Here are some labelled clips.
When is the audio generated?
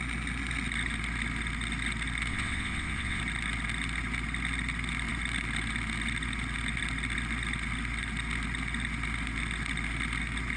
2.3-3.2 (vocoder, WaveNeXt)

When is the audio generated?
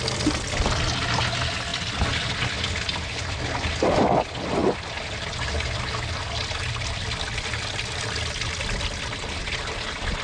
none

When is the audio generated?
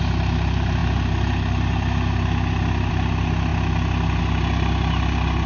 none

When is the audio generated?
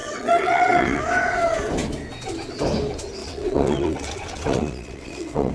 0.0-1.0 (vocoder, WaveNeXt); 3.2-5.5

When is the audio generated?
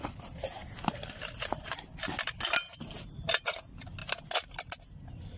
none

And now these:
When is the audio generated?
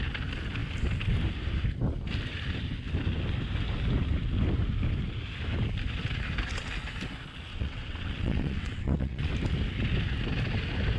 7.5-9.3 (vocoder, WaveNeXt)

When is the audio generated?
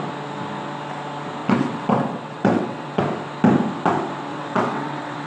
1.4-3.0 (vocoder, WaveNeXt); 4.3-5.3